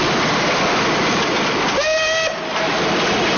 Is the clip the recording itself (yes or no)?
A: yes